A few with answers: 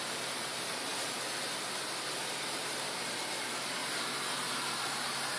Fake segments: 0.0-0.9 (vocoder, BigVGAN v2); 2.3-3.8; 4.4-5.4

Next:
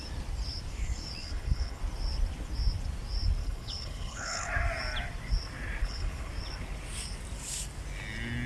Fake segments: 1.2-1.8 (codec, HILCodec); 3.4-4.5; 5.8-6.3

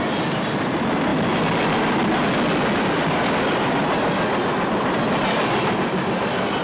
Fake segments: none

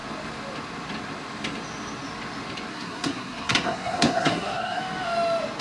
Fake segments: 2.7-4.8 (codec, SNAC)

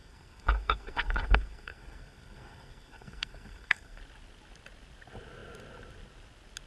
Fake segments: 0.0-4.0 (codec, SNAC)